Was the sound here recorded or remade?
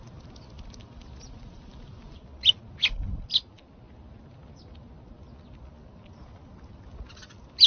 recorded